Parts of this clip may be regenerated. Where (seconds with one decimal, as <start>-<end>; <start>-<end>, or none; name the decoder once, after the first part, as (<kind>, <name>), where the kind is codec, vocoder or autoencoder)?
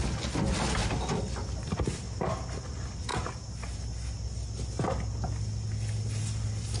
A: none